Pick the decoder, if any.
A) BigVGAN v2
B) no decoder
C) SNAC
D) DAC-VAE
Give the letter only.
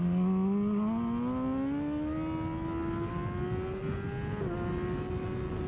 B